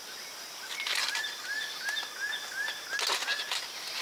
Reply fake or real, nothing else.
real